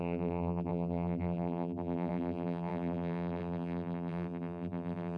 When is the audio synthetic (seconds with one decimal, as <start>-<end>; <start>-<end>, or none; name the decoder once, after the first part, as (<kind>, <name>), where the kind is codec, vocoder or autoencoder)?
0.0-5.2 (vocoder, BigVGAN v2)